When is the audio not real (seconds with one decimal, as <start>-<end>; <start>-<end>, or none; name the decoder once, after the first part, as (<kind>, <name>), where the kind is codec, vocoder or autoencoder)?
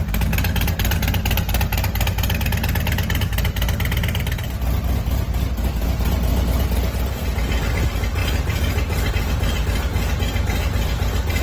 none